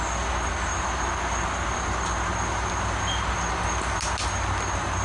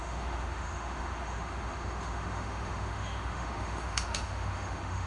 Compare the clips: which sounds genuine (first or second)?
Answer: first